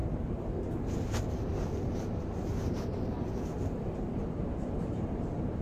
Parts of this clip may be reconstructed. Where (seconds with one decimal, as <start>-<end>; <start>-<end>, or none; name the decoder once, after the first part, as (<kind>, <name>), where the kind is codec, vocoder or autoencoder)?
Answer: 0.0-1.5 (vocoder, BigVGAN v2); 2.2-5.6